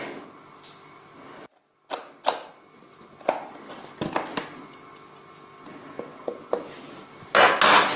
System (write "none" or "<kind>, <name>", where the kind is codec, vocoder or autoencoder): none